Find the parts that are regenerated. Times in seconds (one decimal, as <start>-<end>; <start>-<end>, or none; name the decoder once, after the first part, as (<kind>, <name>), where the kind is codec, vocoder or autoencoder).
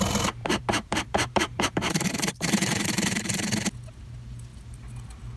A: 0.4-3.5 (vocoder, BigVGAN v2)